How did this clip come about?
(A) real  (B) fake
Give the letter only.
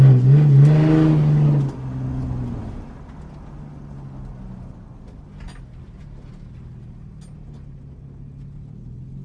A